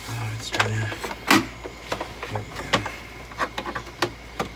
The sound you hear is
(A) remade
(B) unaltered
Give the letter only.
B